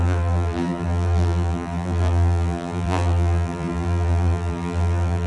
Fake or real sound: fake